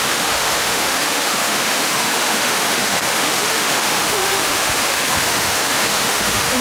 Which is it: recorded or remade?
remade